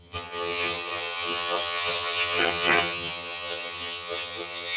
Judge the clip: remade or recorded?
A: remade